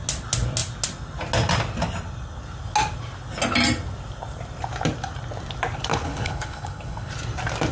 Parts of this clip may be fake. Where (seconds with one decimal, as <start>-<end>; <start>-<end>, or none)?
5.9-7.1